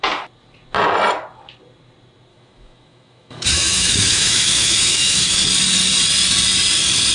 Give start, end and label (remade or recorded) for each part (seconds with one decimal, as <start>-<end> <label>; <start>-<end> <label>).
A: 0.0-2.3 recorded; 2.3-5.4 remade; 5.4-7.1 recorded